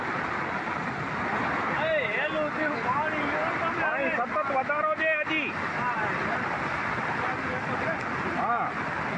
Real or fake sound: real